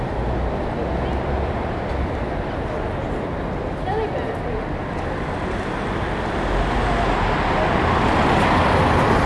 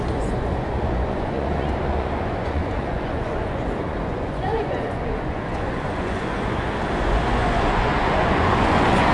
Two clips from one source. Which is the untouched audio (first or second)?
first